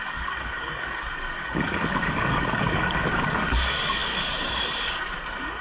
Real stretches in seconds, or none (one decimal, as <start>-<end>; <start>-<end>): none